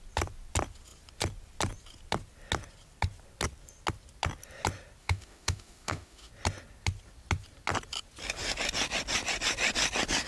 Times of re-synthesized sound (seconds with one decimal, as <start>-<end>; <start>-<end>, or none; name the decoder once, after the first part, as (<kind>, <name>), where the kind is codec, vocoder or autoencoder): 5.0-6.3 (autoencoder, DAC-VAE)